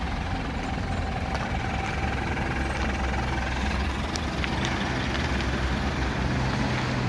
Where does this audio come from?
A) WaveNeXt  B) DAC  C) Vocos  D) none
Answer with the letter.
D